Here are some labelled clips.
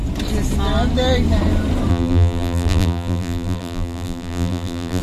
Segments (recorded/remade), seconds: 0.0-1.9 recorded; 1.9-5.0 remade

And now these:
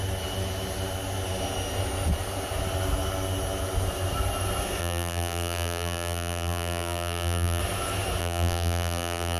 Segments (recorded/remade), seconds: 0.0-4.8 recorded; 4.8-7.6 remade; 7.6-8.2 recorded; 8.2-9.4 remade

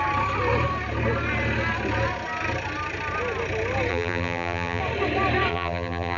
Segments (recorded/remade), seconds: 0.0-3.9 recorded; 3.9-4.8 remade; 4.8-5.5 recorded; 5.5-6.2 remade

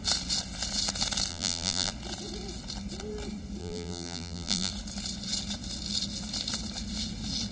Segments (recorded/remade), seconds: 0.0-1.3 recorded; 1.3-1.9 remade; 1.9-3.6 recorded; 3.6-4.7 remade; 4.7-7.5 recorded